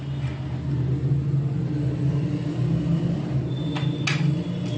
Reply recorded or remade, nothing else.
recorded